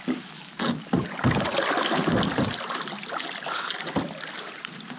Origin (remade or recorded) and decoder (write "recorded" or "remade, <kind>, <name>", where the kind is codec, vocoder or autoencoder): recorded